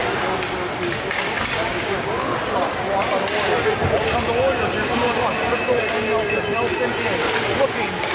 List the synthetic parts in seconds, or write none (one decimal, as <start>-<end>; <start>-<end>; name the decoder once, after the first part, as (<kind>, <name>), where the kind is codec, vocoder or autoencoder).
1.7-2.4 (codec, DAC)